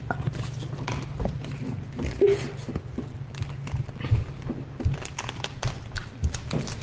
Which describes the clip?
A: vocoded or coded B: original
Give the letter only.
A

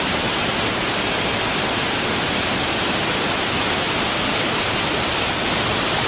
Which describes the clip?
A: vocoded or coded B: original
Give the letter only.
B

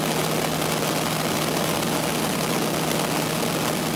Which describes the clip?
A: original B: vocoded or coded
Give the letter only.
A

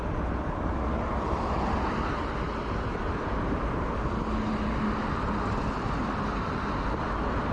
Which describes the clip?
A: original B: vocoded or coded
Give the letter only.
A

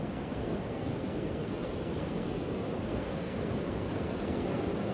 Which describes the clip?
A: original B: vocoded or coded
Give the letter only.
B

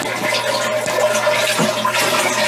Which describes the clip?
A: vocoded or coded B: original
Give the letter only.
B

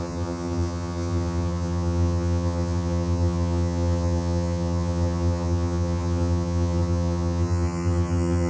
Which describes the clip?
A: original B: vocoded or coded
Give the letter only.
B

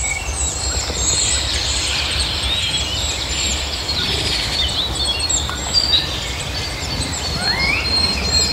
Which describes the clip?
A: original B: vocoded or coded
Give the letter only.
B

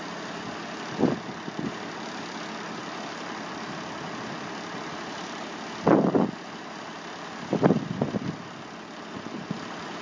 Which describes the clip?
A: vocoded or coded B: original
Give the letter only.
B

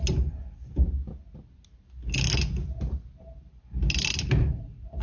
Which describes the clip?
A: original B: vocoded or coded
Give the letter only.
A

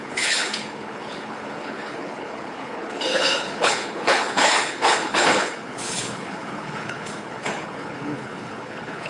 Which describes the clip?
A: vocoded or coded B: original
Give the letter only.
A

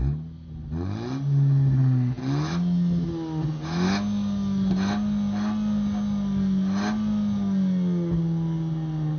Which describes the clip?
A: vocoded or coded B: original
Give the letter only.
B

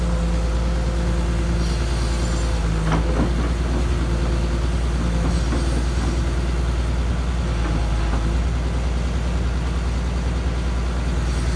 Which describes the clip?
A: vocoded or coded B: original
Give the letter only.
B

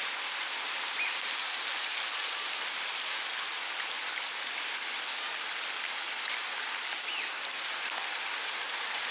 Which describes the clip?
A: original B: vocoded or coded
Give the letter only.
B